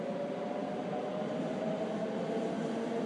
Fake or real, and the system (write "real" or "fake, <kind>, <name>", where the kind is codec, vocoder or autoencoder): real